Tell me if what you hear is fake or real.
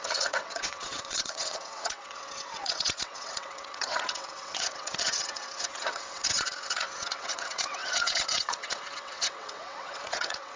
fake